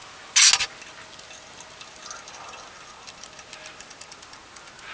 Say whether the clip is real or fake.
real